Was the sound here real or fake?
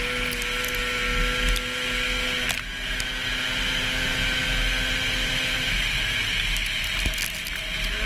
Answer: real